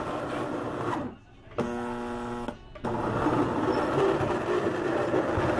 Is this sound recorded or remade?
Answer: recorded